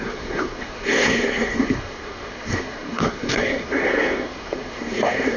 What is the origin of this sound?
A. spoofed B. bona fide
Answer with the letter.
A